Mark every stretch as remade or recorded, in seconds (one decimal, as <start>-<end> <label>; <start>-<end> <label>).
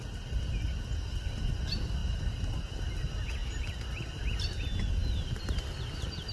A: 0.0-3.4 recorded; 3.4-4.2 remade; 4.2-6.3 recorded